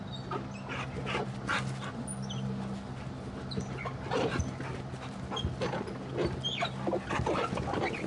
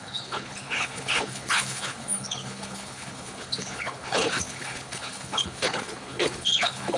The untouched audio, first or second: first